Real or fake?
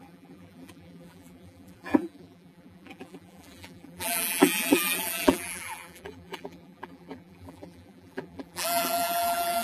fake